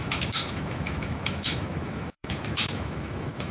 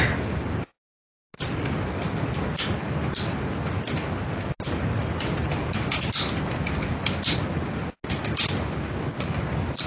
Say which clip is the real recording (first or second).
second